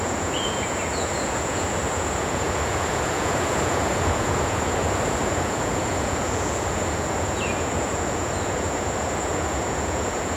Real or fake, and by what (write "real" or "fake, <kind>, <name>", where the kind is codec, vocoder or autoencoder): fake, vocoder, Vocos